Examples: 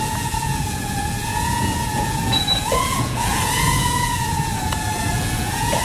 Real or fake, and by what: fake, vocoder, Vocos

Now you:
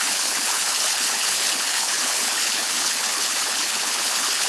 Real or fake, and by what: fake, codec, HILCodec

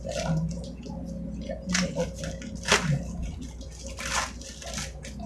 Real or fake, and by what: real